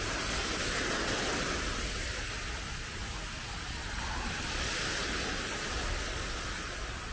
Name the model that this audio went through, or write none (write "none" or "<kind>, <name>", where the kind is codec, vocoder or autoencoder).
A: none